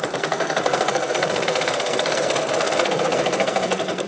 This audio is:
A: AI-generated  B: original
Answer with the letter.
A